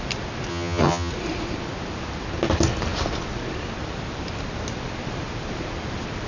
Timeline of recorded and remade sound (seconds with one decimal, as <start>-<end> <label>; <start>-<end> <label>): 0.0-0.5 recorded; 0.5-1.1 remade; 1.1-6.3 recorded

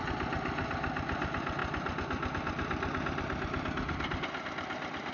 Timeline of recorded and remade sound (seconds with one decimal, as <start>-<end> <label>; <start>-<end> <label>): 0.0-5.1 recorded